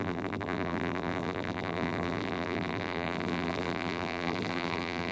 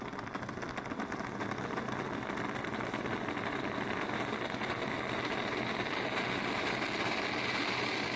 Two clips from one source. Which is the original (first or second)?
second